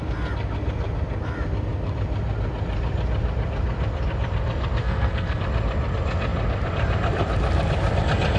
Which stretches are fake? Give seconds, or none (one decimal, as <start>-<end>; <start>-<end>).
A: 4.8-5.4